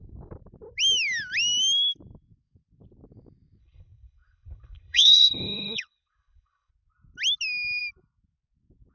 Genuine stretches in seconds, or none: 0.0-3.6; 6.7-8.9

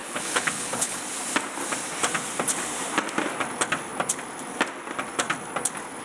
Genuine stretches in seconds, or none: 1.0-6.0

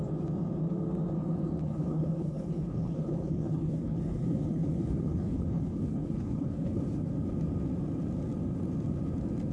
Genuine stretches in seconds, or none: 0.0-1.6; 6.8-9.5

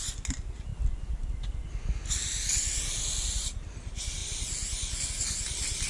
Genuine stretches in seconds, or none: 0.0-5.9

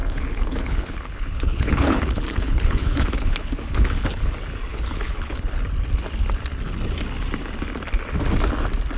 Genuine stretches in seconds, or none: 4.3-4.7; 5.5-9.0